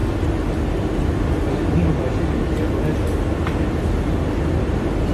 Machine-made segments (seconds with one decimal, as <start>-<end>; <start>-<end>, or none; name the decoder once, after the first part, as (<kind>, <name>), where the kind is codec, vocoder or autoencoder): none